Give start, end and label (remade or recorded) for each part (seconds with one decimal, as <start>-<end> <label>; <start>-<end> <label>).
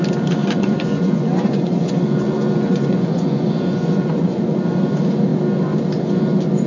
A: 0.0-0.4 recorded; 0.4-4.4 remade; 4.4-6.7 recorded